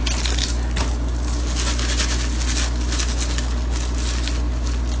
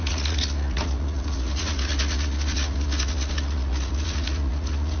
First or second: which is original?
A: first